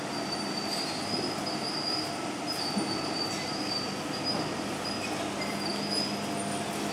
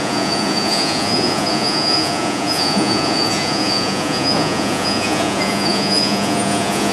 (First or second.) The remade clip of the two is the second